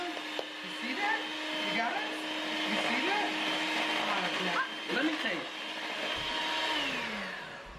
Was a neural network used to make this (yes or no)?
no